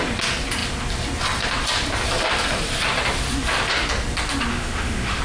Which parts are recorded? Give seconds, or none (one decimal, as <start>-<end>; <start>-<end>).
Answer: 0.0-4.5

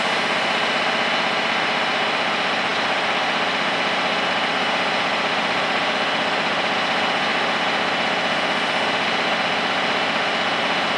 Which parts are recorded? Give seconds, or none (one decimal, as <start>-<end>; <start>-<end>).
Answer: 0.0-11.0

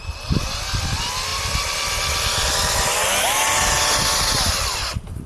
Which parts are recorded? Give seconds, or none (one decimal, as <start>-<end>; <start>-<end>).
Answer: 0.0-5.3

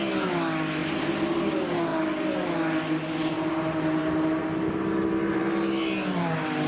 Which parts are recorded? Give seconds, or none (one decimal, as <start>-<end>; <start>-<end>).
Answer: 0.0-6.7

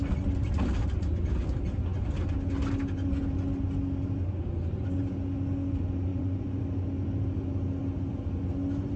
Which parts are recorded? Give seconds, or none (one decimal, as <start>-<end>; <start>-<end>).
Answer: 0.0-6.1; 6.6-9.0